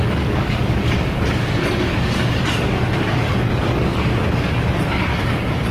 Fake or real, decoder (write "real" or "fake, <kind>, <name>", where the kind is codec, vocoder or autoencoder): fake, codec, DAC